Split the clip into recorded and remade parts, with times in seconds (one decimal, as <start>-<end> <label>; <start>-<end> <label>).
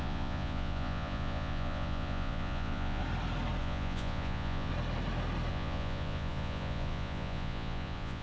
0.0-3.0 remade; 3.0-3.6 recorded; 3.6-4.7 remade; 4.7-5.5 recorded; 5.5-8.2 remade